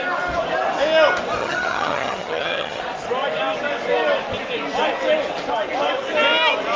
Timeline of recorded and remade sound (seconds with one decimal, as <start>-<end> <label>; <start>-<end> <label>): 0.0-1.4 recorded; 1.4-2.8 remade; 2.8-6.8 recorded